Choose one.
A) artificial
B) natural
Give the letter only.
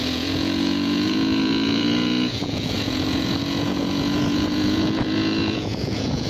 A